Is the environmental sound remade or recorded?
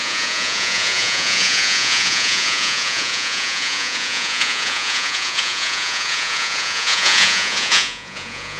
remade